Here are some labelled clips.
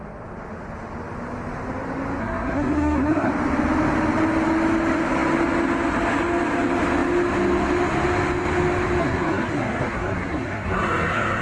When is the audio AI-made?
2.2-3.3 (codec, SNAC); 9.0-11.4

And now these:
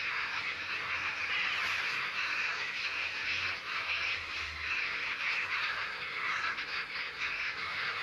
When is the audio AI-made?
0.0-1.2 (codec, SNAC); 1.8-8.0

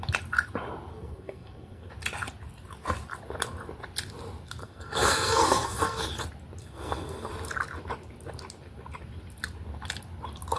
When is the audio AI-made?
0.9-1.9 (codec, SNAC); 4.6-6.0; 6.6-7.3

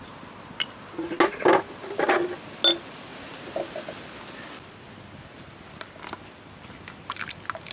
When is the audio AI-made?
none

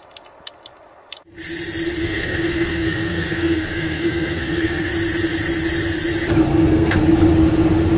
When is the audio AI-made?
2.0-4.9 (codec, SNAC); 6.5-7.0